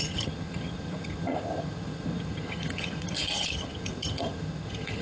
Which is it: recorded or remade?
remade